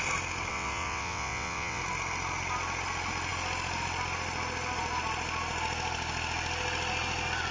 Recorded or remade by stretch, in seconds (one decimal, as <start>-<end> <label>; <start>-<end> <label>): 0.0-0.5 recorded; 0.5-1.8 remade; 1.8-7.5 recorded